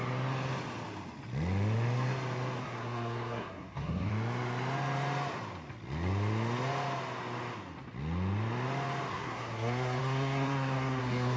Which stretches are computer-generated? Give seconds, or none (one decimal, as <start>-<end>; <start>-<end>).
2.6-4.1; 9.1-11.4